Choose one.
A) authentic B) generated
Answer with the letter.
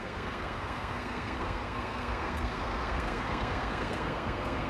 B